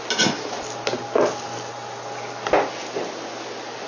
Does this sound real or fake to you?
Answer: real